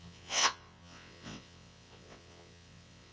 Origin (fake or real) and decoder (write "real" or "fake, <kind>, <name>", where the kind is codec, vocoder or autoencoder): fake, vocoder, WaveNeXt